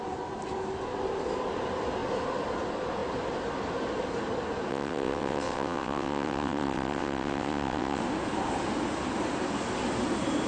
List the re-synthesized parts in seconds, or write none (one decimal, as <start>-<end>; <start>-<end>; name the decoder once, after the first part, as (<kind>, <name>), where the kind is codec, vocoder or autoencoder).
4.7-8.0 (vocoder, WaveNeXt)